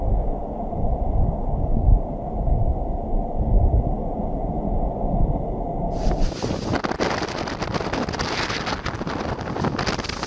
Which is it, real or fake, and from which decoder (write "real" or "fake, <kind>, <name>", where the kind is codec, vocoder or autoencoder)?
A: real